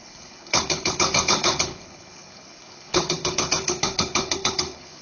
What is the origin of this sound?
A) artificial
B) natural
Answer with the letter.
A